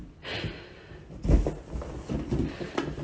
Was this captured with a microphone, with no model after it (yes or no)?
no